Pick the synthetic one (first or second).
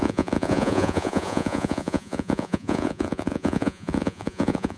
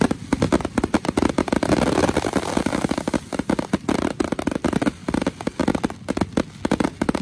first